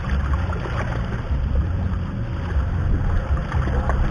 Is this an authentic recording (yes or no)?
yes